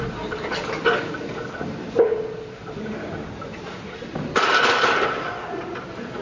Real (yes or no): yes